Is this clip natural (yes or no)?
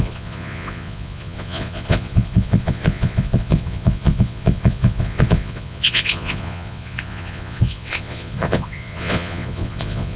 no